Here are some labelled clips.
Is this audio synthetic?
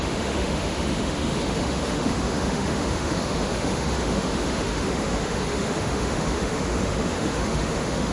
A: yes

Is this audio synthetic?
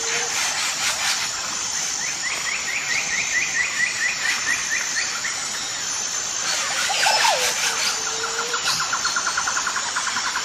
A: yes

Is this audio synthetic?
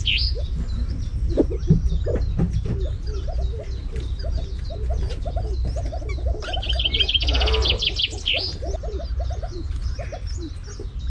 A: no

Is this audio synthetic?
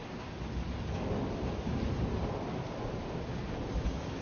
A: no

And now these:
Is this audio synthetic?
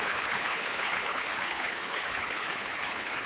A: yes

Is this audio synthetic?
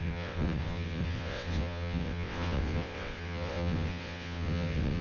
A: yes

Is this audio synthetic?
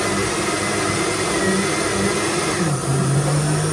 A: no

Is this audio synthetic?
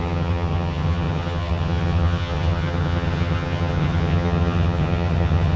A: yes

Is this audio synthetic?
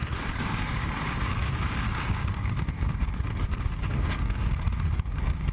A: yes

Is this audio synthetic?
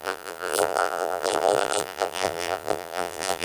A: yes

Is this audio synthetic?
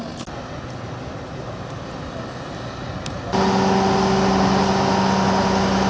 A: no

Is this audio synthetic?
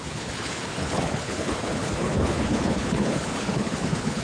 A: yes